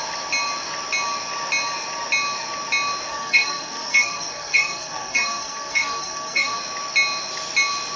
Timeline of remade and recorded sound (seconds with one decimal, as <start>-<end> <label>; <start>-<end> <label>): 0.0-3.1 recorded; 3.1-6.6 remade; 6.6-8.0 recorded